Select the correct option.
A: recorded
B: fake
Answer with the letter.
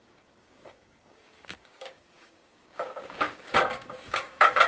B